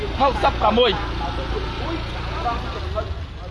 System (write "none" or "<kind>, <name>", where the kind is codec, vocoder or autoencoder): none